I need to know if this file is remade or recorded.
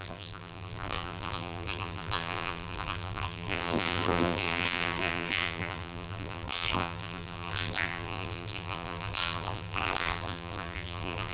remade